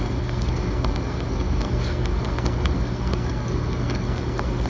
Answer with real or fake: fake